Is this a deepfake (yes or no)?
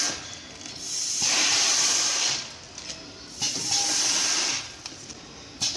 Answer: no